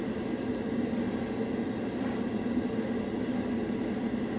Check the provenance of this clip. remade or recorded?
recorded